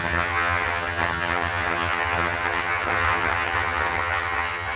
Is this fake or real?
fake